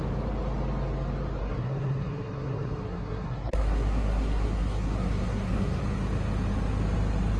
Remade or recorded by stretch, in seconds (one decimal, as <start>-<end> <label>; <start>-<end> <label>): 0.0-1.4 recorded; 1.4-5.8 remade; 5.8-7.4 recorded

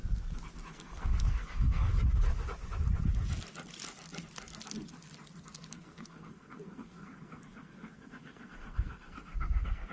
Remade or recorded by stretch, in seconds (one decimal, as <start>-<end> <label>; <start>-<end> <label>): 0.0-0.7 recorded; 0.7-1.9 remade; 1.9-5.7 recorded; 5.7-9.9 remade

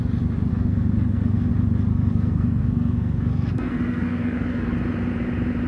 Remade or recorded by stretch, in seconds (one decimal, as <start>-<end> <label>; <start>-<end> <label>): 0.0-0.5 recorded; 0.5-1.5 remade; 1.5-1.9 recorded; 1.9-4.7 remade; 4.7-5.7 recorded

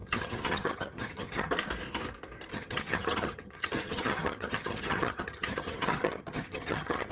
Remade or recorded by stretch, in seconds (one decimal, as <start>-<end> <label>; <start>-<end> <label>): 0.0-1.5 remade; 1.5-2.5 recorded; 2.5-7.1 remade

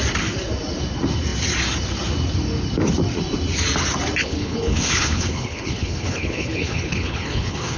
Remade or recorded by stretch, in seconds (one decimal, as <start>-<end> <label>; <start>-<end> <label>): 0.0-4.2 recorded; 4.2-7.8 remade

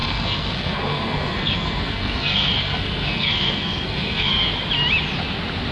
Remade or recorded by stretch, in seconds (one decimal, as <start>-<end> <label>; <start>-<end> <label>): 0.0-4.3 remade; 4.3-5.7 recorded

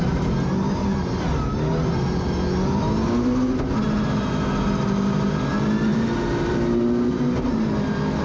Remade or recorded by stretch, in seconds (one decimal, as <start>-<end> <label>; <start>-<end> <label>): 0.0-8.2 recorded

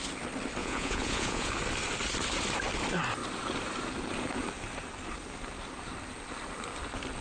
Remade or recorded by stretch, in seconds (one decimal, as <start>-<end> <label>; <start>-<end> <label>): 0.0-0.6 recorded; 0.6-1.5 remade; 1.5-7.2 recorded